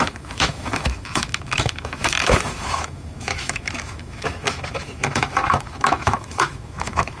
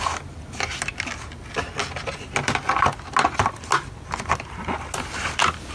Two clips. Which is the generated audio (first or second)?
first